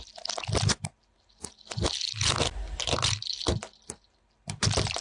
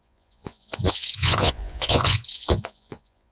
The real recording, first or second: first